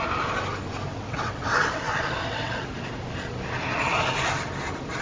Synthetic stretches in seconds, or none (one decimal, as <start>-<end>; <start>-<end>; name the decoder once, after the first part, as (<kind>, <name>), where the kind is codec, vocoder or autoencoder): 0.9-2.7 (vocoder, WaveNeXt)